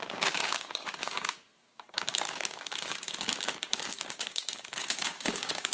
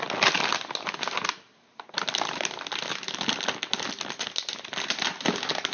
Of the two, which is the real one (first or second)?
second